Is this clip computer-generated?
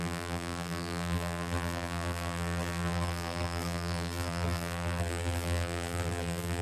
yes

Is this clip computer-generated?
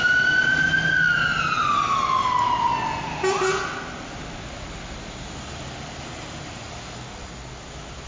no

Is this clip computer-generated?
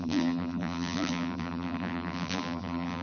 yes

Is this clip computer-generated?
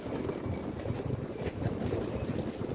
no